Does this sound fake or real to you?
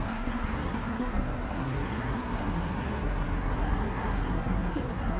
fake